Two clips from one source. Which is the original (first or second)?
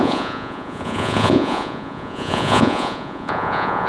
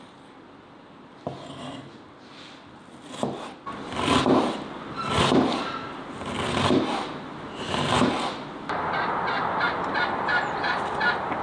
second